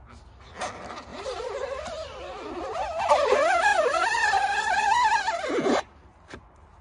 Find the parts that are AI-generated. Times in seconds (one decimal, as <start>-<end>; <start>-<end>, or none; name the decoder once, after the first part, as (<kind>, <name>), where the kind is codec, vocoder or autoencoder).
1.1-3.1 (vocoder, BigVGAN v2)